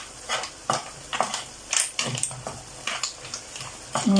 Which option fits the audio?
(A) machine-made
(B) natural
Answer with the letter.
A